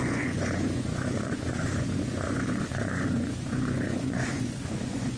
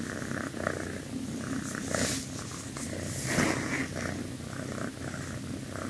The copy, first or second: first